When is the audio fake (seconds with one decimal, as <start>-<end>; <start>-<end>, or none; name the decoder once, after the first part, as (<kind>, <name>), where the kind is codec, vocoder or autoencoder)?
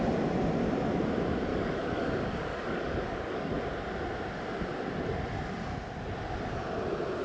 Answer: 1.5-3.5 (codec, DAC)